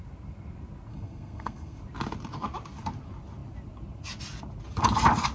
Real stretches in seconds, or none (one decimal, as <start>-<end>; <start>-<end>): 0.0-0.9; 1.8-5.3